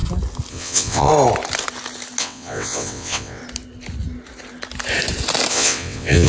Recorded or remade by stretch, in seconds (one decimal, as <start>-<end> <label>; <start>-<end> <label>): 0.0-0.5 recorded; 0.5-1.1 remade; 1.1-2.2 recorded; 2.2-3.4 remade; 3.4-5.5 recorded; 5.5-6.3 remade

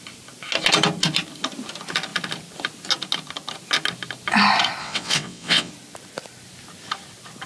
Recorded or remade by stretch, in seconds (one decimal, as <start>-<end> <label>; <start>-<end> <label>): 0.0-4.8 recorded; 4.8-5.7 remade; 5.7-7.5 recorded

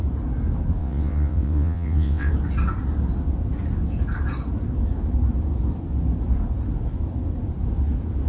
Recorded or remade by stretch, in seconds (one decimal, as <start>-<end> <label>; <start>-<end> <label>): 0.0-0.8 recorded; 0.8-2.3 remade; 2.3-8.3 recorded